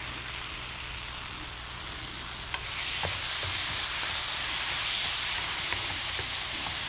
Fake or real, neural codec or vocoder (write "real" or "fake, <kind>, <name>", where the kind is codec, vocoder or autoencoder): real